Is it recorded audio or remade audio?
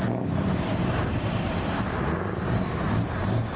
recorded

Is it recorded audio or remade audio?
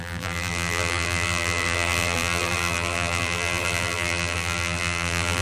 remade